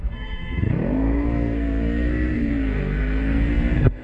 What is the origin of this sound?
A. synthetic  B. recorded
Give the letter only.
A